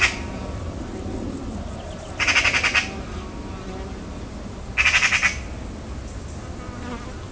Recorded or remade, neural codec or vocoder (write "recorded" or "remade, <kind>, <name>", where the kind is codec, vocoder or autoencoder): recorded